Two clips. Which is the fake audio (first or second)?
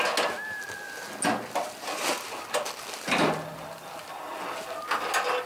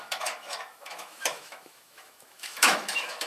second